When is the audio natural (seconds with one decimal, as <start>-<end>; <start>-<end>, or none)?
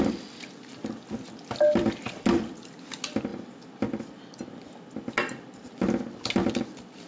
0.0-7.1